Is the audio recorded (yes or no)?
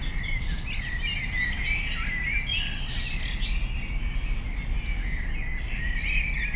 yes